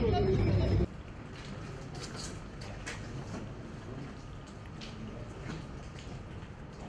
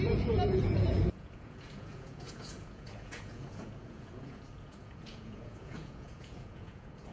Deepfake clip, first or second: second